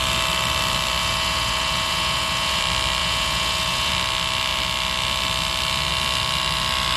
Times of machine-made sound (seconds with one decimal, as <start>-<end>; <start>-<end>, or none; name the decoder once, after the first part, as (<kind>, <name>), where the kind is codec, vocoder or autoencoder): 1.0-2.6 (vocoder, Vocos); 3.0-3.9